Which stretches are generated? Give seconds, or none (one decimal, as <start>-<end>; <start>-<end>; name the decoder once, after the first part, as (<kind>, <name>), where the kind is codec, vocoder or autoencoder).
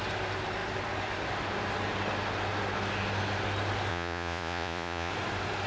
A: 3.9-5.1 (vocoder, Vocos)